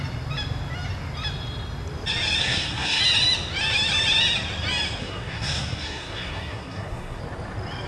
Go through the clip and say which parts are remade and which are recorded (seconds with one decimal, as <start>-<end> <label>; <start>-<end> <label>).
0.0-2.4 recorded; 2.4-3.0 remade; 3.0-5.0 recorded; 5.0-7.2 remade; 7.2-7.9 recorded